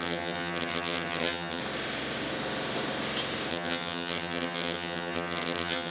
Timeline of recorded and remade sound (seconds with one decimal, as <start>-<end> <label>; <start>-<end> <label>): 0.0-1.6 remade; 1.6-3.5 recorded; 3.5-5.9 remade

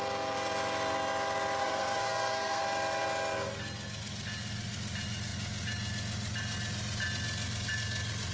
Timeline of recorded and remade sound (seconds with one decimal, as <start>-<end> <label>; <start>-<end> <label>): 0.0-1.6 recorded; 1.6-2.6 remade; 2.6-8.3 recorded

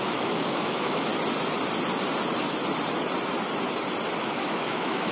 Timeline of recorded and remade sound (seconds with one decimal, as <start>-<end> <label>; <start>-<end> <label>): 0.0-1.1 remade; 1.1-4.2 recorded; 4.2-5.1 remade

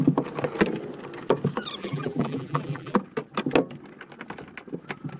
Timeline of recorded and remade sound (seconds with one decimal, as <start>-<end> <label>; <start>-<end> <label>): 0.0-1.8 recorded; 1.8-3.0 remade; 3.0-5.2 recorded

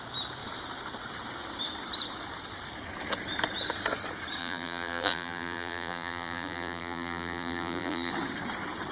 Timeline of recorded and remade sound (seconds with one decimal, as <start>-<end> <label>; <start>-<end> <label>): 0.0-4.4 recorded; 4.4-8.1 remade; 8.1-8.9 recorded

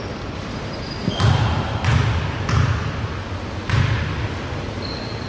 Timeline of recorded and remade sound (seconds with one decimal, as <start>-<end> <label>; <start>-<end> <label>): 0.0-5.3 recorded